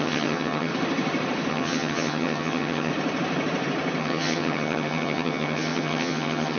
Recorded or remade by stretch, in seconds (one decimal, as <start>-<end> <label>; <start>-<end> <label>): 0.0-0.7 remade; 0.7-1.5 recorded; 1.5-2.9 remade; 2.9-4.0 recorded; 4.0-6.6 remade